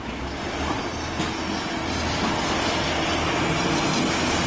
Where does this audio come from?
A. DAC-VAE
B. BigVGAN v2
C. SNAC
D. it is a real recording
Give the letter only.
D